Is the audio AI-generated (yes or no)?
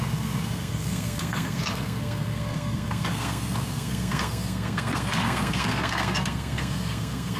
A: yes